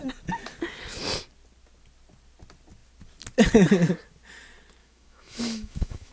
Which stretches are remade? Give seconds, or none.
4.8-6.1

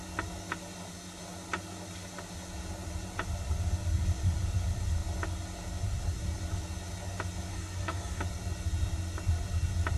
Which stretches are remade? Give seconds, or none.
7.5-8.2

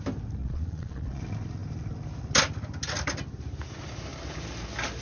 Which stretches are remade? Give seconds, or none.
0.4-1.2